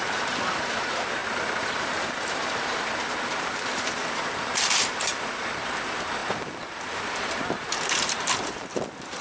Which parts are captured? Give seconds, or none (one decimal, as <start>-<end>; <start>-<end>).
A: none